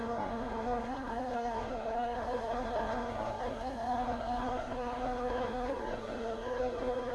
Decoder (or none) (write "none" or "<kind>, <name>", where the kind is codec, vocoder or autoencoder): codec, SNAC